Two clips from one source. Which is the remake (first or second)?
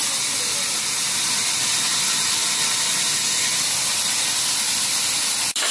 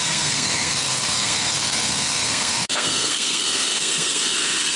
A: second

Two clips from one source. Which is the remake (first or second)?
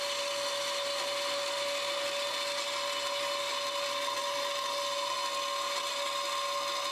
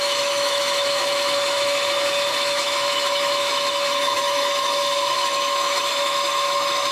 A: second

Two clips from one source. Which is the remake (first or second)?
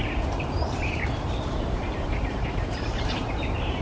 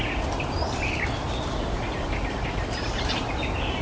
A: first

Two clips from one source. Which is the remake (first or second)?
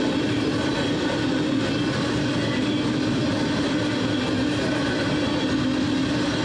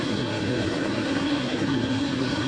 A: second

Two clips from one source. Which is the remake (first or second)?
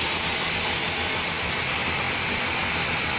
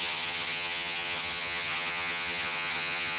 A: second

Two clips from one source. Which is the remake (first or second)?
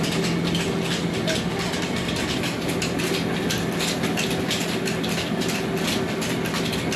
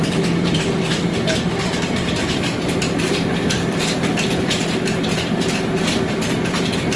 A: second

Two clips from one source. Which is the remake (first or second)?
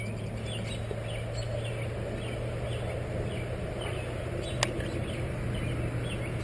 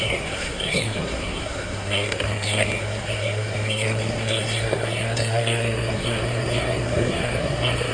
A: second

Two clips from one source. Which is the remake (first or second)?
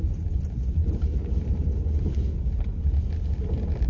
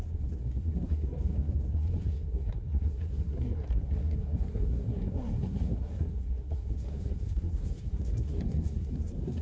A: second